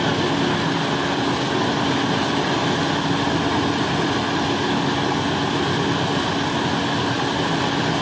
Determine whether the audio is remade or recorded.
recorded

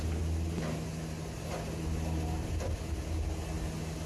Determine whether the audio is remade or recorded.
recorded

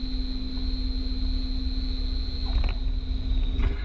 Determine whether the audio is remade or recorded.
recorded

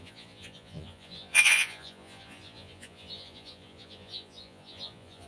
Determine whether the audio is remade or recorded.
remade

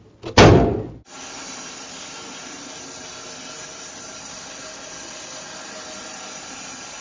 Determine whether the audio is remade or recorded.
recorded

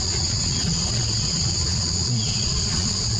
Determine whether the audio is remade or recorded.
remade